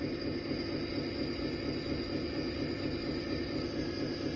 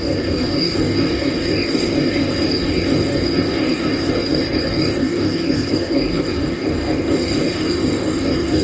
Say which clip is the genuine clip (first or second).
first